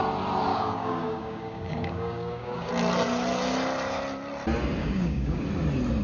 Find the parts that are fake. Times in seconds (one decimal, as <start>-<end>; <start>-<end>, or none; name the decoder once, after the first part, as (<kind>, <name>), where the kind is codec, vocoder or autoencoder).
0.5-2.7 (codec, DAC); 4.8-5.4